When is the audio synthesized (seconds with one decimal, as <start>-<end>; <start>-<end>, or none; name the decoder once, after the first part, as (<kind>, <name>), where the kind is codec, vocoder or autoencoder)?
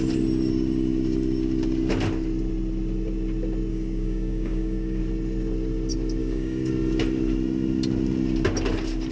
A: 3.7-5.0 (codec, DAC); 6.2-6.7